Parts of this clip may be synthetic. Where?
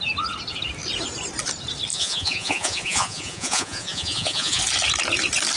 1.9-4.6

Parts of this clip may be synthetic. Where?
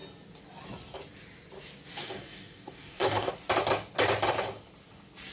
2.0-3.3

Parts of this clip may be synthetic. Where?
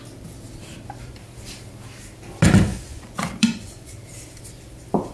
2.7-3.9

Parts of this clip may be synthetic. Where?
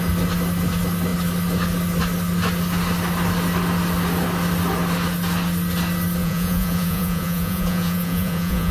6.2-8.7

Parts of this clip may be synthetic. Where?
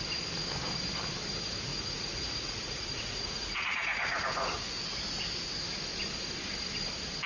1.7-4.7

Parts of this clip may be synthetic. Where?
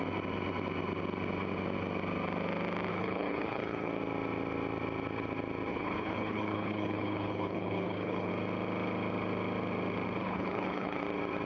2.9-3.9; 5.7-8.3; 10.2-11.0